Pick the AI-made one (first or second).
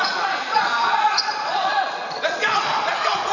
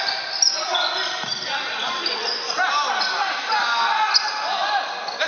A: first